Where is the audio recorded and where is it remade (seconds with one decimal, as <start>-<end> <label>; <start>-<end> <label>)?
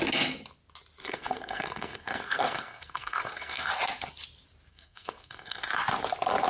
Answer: 0.0-1.0 recorded; 1.0-3.7 remade; 3.7-4.7 recorded; 4.7-5.6 remade; 5.6-6.5 recorded